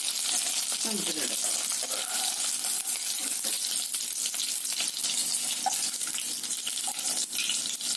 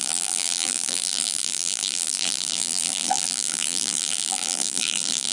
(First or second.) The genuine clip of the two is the first